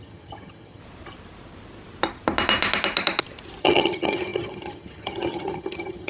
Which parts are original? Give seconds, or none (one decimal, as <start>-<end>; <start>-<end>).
0.8-3.6